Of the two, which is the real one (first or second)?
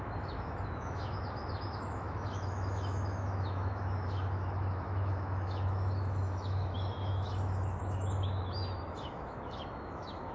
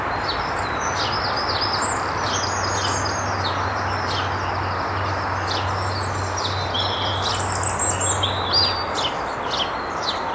second